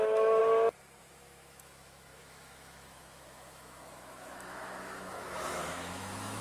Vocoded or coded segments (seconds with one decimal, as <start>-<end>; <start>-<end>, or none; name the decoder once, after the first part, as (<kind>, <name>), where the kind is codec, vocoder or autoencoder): 0.0-0.4 (autoencoder, DAC-VAE); 1.0-6.4